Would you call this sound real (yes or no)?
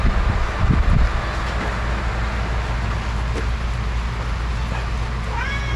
yes